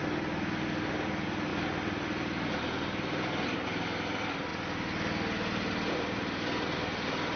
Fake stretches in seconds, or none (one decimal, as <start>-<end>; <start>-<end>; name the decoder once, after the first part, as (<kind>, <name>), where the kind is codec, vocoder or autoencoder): none